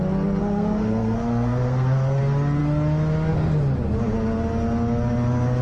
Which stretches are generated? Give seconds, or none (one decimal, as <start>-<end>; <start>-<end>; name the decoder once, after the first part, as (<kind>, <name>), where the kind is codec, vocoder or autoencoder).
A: 0.4-2.2 (codec, SNAC)